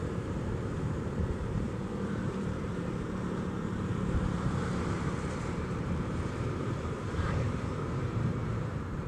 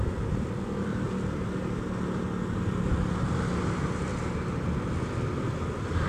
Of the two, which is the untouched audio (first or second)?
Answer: second